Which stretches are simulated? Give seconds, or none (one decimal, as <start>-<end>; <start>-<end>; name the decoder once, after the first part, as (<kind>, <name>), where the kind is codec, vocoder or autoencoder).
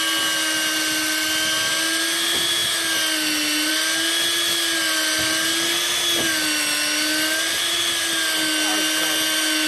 none